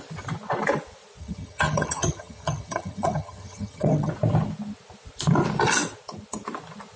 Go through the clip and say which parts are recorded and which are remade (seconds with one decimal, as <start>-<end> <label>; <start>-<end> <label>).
0.0-1.2 recorded; 1.2-4.1 remade; 4.1-7.0 recorded